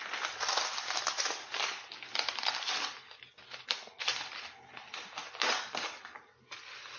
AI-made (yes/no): no